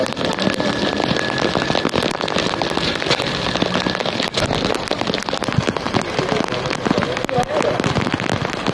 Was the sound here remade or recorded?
recorded